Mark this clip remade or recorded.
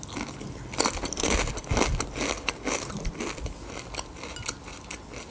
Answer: recorded